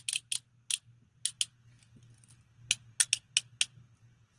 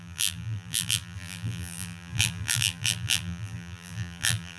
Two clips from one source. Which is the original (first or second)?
first